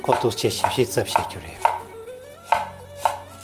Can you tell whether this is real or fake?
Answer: real